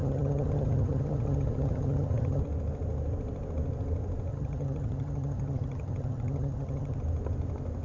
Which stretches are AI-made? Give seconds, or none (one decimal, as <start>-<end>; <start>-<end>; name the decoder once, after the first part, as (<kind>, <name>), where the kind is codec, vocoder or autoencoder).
0.0-2.4 (vocoder, HiFi-GAN); 4.3-7.0